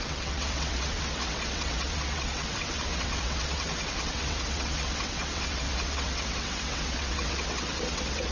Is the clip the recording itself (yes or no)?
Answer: no